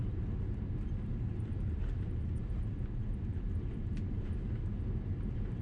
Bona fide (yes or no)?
no